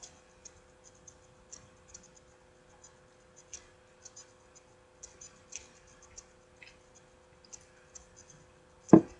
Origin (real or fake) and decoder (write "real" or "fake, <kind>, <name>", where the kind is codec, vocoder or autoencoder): real